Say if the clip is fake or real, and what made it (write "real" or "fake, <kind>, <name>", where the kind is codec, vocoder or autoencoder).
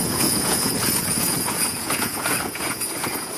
fake, vocoder, Vocos